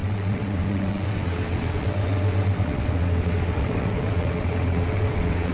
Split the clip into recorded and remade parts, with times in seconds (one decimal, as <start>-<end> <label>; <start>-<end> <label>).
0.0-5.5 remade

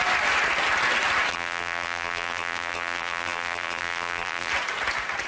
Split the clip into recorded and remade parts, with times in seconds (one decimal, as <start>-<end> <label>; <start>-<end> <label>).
0.0-1.3 recorded; 1.3-4.5 remade; 4.5-5.3 recorded

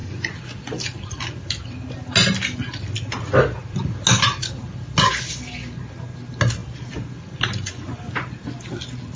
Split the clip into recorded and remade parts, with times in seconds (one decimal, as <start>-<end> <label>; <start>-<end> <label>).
0.0-9.2 recorded

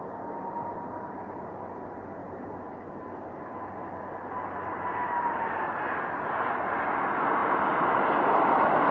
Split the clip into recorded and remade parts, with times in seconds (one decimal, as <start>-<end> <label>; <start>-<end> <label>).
0.0-8.9 recorded

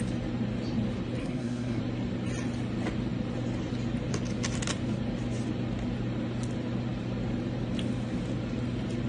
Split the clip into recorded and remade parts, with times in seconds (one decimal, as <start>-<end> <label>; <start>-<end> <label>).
0.0-1.2 recorded; 1.2-1.8 remade; 1.8-9.1 recorded

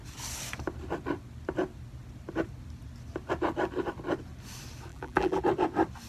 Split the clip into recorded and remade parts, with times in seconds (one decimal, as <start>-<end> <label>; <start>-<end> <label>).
0.0-4.9 recorded; 4.9-5.4 remade; 5.4-6.1 recorded

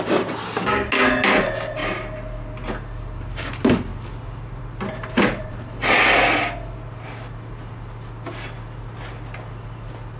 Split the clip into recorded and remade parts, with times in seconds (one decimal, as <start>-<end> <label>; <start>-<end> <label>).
0.0-10.2 recorded